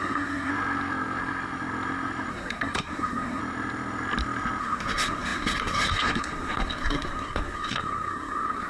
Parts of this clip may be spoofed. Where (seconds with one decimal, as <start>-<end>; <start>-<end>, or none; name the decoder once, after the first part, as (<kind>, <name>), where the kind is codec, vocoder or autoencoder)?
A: 0.0-0.5 (codec, SNAC); 2.3-3.4; 4.6-8.7